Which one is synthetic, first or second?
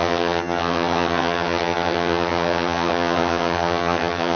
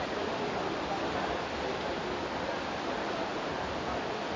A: first